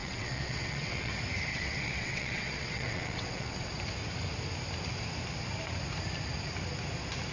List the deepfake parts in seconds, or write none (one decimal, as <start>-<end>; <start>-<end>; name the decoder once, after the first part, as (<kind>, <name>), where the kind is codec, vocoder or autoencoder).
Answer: 0.0-1.1 (vocoder, WaveNeXt); 1.5-3.7